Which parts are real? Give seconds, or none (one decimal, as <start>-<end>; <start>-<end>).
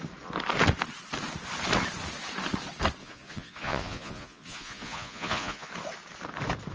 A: 0.0-3.0; 5.7-6.7